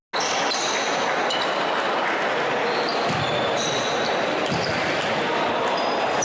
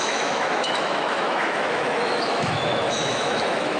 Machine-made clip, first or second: second